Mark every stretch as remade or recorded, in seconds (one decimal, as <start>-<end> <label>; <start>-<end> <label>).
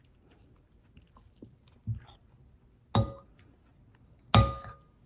0.0-5.1 recorded